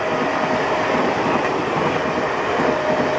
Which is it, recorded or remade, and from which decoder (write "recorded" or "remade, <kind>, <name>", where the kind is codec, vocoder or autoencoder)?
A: recorded